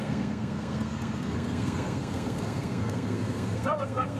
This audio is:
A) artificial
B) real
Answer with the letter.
A